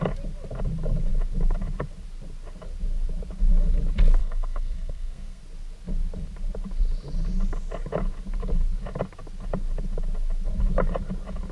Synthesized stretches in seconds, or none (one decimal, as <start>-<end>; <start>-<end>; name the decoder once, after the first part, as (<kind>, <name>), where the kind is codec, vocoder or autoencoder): 4.2-5.4 (codec, SNAC)

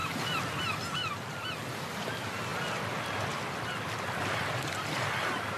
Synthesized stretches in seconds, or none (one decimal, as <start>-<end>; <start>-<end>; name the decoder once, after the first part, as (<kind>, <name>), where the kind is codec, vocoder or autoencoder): none

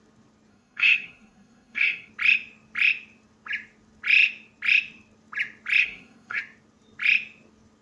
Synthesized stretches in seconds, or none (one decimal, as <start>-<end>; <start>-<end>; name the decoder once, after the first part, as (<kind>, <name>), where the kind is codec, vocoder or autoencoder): 0.5-2.1 (codec, SNAC); 5.8-6.4

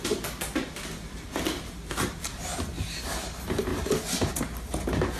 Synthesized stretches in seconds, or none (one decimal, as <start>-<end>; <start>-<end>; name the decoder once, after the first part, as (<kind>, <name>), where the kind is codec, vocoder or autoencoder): none